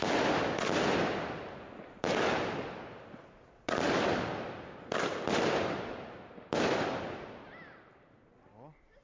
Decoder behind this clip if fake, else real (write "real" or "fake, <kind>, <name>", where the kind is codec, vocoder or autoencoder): real